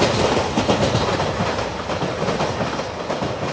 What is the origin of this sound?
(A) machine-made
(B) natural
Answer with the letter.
B